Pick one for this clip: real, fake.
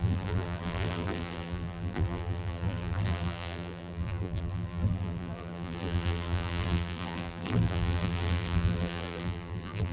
fake